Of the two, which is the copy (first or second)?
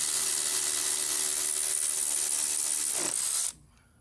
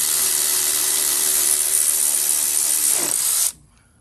second